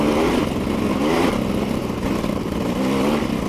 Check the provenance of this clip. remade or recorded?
recorded